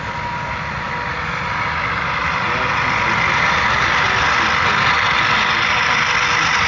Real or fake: real